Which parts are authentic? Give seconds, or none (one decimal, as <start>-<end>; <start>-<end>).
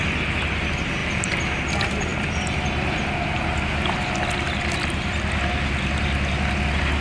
0.0-7.0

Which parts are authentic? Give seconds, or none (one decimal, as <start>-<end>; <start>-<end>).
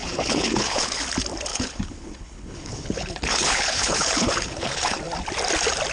1.0-1.5; 5.0-5.9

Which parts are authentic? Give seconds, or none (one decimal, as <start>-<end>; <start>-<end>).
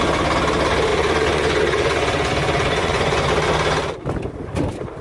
0.0-0.9; 3.3-5.0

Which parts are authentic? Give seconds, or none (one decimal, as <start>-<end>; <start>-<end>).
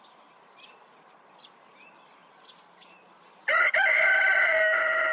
0.0-5.1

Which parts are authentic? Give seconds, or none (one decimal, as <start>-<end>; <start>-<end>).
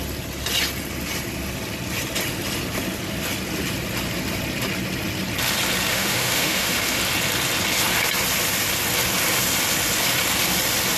0.0-5.9; 7.0-11.0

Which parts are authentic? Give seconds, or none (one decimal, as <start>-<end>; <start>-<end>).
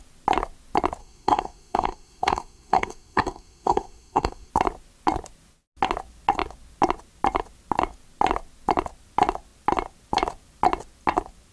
0.0-1.0; 4.5-11.5